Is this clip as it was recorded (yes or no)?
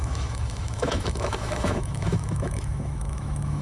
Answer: no